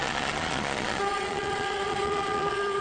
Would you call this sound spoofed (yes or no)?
yes